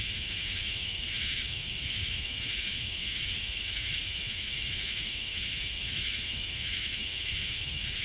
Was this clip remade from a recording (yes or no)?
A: yes